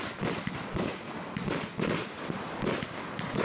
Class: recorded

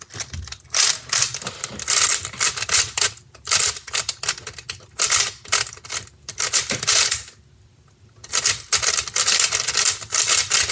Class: recorded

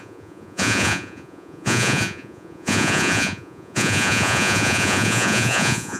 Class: remade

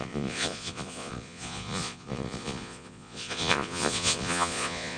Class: remade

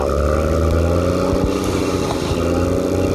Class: recorded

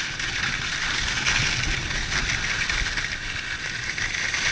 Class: recorded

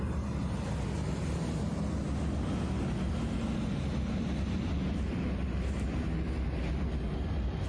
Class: recorded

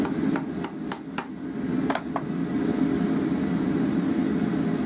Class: recorded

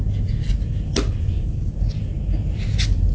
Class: recorded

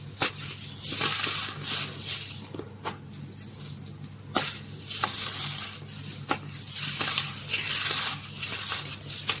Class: recorded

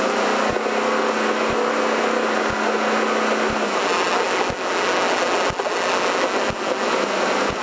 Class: recorded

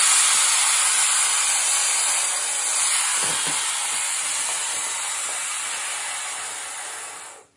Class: recorded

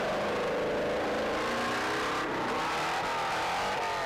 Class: recorded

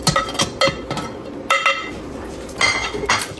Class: recorded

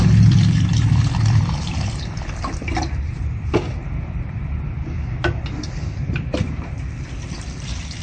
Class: remade